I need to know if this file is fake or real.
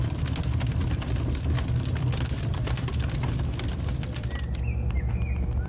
real